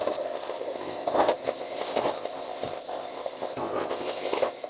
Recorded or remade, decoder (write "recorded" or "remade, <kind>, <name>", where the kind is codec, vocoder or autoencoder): remade, codec, ZipCodec